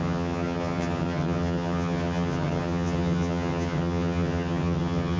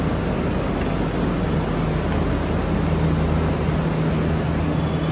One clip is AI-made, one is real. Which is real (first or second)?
second